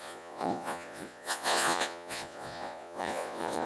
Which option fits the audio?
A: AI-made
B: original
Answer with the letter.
A